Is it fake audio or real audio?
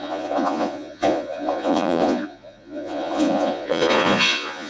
fake